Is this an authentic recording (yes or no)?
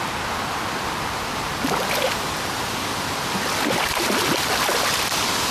yes